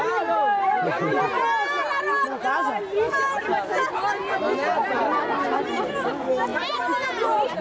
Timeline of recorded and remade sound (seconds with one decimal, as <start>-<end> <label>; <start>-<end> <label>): 0.0-7.6 recorded

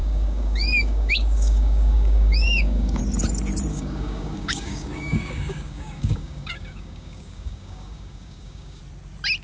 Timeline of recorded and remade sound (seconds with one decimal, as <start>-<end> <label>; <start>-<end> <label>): 0.0-3.0 remade; 3.0-3.7 recorded; 3.7-8.8 remade; 8.8-9.4 recorded

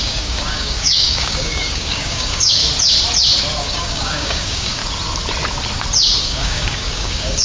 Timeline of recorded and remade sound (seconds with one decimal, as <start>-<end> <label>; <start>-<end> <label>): 0.0-2.6 remade; 2.6-3.6 recorded; 3.6-4.8 remade; 4.8-6.2 recorded; 6.2-7.4 remade

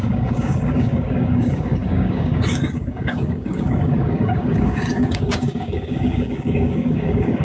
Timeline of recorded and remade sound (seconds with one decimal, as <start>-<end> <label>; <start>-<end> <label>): 0.0-7.4 remade

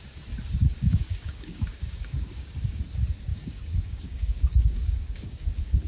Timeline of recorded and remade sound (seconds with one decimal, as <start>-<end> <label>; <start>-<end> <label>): 0.0-0.7 recorded; 0.7-2.8 remade; 2.8-3.3 recorded; 3.3-5.9 remade

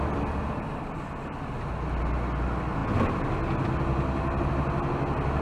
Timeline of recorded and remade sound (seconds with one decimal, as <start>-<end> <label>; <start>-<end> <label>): 0.0-5.4 recorded

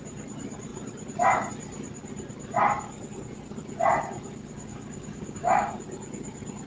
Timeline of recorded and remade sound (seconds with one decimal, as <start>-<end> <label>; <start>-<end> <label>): 0.0-4.3 recorded; 4.3-5.7 remade; 5.7-6.7 recorded

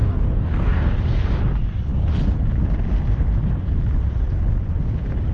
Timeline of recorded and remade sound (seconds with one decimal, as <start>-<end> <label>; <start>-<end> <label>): 0.0-0.9 remade; 0.9-5.3 recorded